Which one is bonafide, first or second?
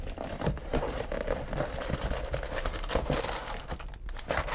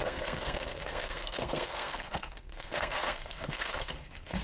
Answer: first